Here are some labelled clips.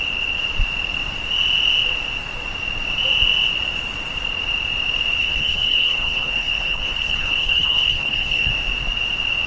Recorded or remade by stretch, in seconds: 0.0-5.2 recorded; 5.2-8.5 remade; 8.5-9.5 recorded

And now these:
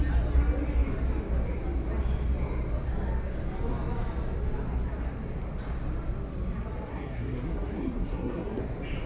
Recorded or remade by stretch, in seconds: 0.0-6.9 recorded; 6.9-8.6 remade; 8.6-9.1 recorded

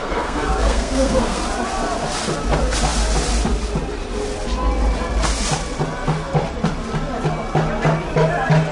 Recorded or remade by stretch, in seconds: 0.0-1.4 remade; 1.4-8.7 recorded

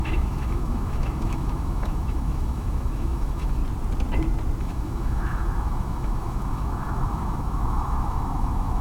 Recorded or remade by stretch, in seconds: 0.0-3.6 remade; 3.6-4.6 recorded; 4.6-8.8 remade

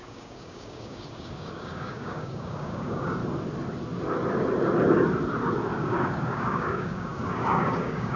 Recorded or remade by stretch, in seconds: 0.0-3.2 remade; 3.2-5.8 recorded; 5.8-8.2 remade

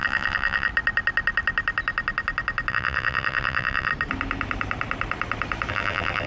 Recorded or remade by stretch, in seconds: 0.0-0.7 remade; 0.7-2.7 recorded; 2.7-3.9 remade; 3.9-5.7 recorded; 5.7-6.3 remade

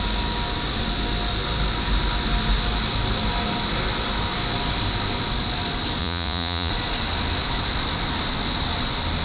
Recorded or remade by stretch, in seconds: 0.0-6.0 recorded; 6.0-6.7 remade; 6.7-9.2 recorded

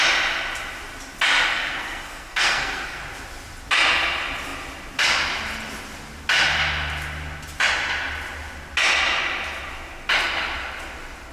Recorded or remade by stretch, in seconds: 0.0-1.5 recorded; 1.5-3.0 remade; 3.0-11.3 recorded